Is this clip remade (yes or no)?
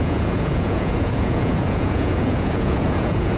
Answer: yes